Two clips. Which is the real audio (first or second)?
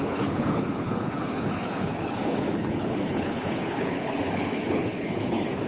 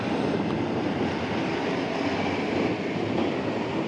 second